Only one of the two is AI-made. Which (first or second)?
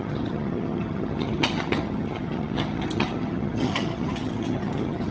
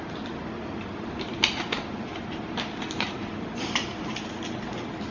first